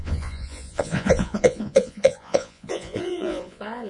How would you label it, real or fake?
fake